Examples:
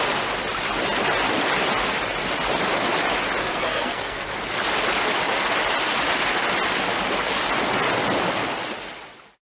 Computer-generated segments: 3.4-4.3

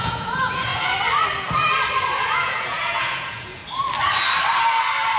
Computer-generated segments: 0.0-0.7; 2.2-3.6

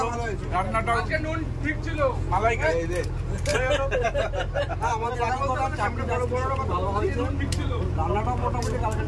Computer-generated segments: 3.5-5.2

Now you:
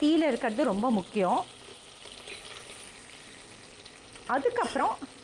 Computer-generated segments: none

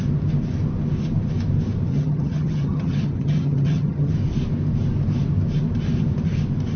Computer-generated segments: 1.9-4.1

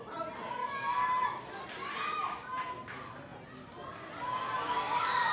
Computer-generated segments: 0.6-1.6

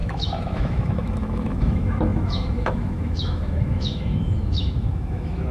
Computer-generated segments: 0.0-5.5